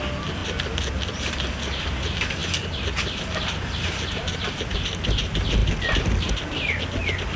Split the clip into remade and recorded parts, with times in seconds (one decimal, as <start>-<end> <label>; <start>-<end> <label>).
0.0-7.4 recorded